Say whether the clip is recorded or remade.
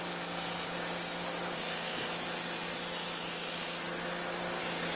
recorded